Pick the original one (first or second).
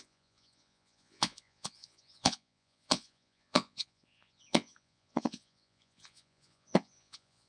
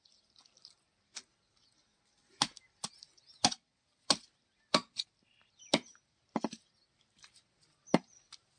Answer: second